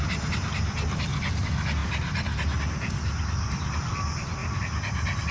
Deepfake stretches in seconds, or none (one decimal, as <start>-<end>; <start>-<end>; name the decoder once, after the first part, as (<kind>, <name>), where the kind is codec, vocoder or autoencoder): 1.8-3.6 (vocoder, BigVGAN v2); 4.4-5.3

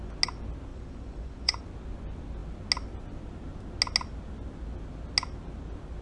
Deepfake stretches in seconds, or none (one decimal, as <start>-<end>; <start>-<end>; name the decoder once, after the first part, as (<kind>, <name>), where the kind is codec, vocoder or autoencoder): 0.7-1.6 (vocoder, Vocos)

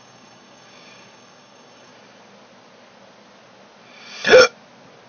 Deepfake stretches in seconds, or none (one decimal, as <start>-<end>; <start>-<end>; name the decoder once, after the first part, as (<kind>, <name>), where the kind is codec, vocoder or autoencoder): 0.0-1.9 (codec, DAC)